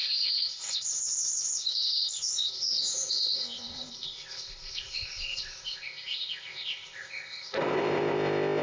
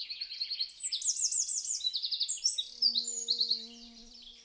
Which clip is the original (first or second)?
second